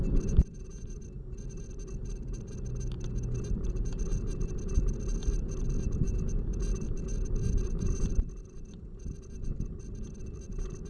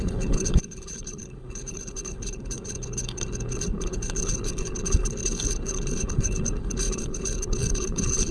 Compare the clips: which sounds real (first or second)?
first